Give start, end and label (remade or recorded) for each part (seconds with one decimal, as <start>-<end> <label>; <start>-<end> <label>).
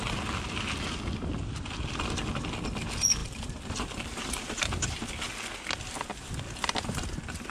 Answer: 0.0-3.2 recorded; 3.2-5.0 remade; 5.0-7.5 recorded